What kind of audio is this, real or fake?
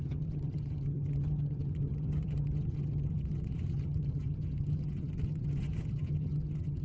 fake